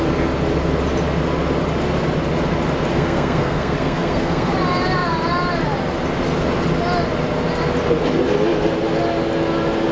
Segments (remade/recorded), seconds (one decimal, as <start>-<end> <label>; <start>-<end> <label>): 0.0-2.9 recorded; 2.9-4.5 remade; 4.5-9.9 recorded